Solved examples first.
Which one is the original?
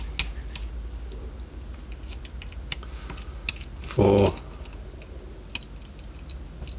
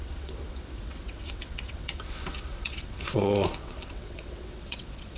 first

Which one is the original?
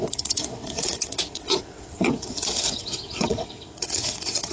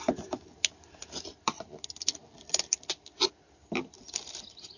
second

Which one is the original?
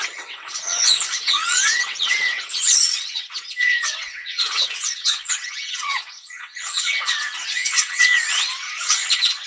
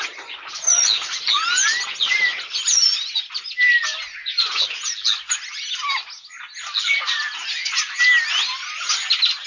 second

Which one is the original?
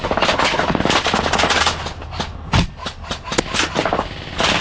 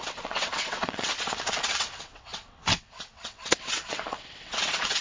first